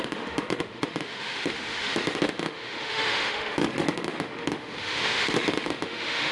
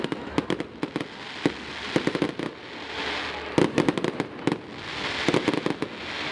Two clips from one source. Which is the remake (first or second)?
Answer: first